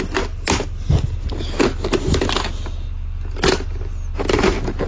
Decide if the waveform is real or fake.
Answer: real